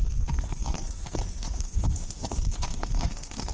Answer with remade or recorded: remade